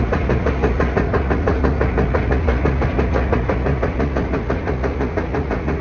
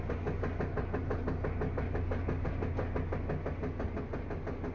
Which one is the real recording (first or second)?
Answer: second